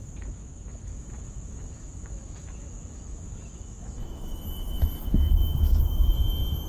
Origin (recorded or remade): remade